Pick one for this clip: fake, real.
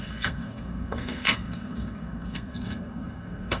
fake